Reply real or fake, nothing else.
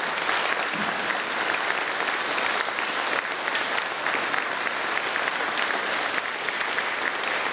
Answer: real